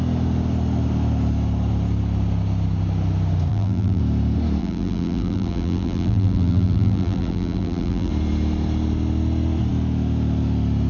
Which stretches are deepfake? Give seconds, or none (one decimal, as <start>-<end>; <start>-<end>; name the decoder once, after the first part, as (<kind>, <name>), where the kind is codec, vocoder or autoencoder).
3.5-4.0 (vocoder, BigVGAN v2); 4.6-8.1

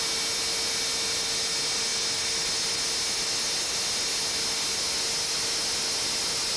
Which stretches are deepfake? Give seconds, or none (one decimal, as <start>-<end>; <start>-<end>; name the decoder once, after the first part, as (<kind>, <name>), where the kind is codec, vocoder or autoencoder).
none

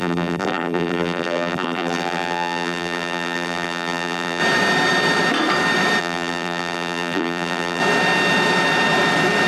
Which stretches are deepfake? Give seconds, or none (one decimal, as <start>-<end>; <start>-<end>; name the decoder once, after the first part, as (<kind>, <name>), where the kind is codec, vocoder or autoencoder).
0.0-4.4 (vocoder, BigVGAN v2); 6.0-7.8

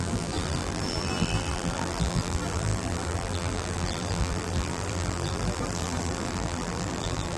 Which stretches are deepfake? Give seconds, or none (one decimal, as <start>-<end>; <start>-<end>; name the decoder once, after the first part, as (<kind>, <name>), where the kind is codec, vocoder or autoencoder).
0.0-7.4 (vocoder, BigVGAN v2)

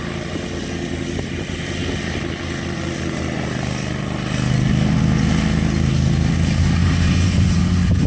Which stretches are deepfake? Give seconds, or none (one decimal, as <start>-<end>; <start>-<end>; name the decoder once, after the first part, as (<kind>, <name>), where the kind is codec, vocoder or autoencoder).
6.8-7.6 (vocoder, BigVGAN v2)